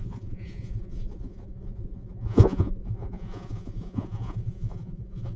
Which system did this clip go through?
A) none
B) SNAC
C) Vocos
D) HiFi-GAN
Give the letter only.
C